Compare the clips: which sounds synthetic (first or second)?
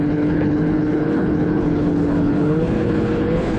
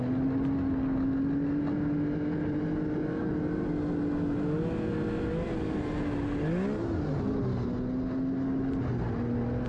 first